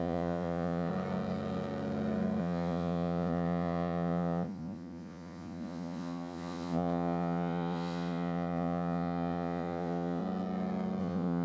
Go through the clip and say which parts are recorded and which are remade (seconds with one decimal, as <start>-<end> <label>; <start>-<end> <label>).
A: 0.0-0.9 remade; 0.9-2.4 recorded; 2.4-10.2 remade; 10.2-11.0 recorded; 11.0-11.4 remade